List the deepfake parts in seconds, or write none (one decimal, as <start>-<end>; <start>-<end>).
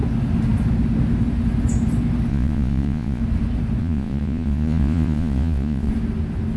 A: 2.3-3.2; 3.8-5.9